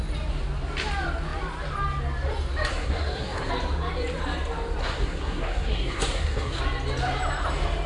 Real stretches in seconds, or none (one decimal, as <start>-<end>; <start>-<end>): 0.0-2.7; 3.5-4.8; 6.6-7.9